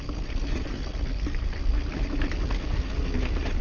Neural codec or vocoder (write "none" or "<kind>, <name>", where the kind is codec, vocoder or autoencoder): none